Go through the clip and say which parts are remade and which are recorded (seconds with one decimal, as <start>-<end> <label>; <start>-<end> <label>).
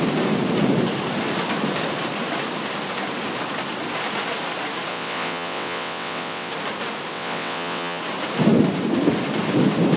0.0-4.9 recorded; 4.9-6.5 remade; 6.5-7.1 recorded; 7.1-8.0 remade; 8.0-10.0 recorded